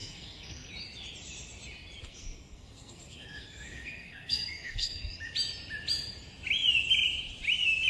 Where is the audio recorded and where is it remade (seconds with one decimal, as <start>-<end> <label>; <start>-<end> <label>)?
0.0-0.7 remade; 0.7-2.0 recorded; 2.0-5.2 remade; 5.2-7.9 recorded